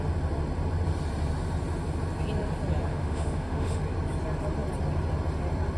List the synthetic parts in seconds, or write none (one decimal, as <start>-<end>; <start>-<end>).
2.9-3.8